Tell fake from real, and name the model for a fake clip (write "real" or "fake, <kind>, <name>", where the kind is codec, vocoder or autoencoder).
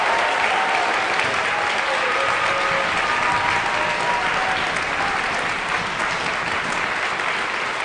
real